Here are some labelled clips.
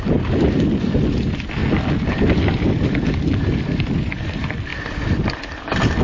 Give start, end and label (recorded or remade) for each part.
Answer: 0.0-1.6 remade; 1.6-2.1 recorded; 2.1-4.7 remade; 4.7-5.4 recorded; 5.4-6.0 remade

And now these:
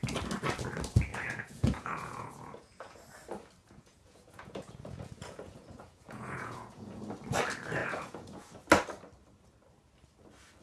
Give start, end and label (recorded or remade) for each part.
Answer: 0.0-1.1 recorded; 1.1-3.0 remade; 3.0-3.6 recorded; 3.6-7.0 remade; 7.0-7.8 recorded; 7.8-8.5 remade; 8.5-10.6 recorded

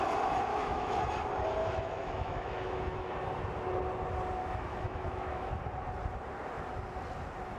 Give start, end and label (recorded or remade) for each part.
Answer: 0.0-0.5 recorded; 0.5-1.0 remade; 1.0-1.6 recorded; 1.6-3.1 remade; 3.1-4.4 recorded; 4.4-5.5 remade; 5.5-7.6 recorded

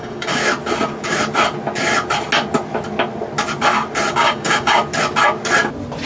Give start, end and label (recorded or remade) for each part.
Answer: 0.0-0.4 remade; 0.4-4.1 recorded; 4.1-4.8 remade; 4.8-6.1 recorded

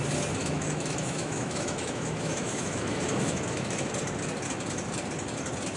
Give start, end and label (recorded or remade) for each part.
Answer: 0.0-0.4 recorded; 0.4-3.9 remade; 3.9-5.8 recorded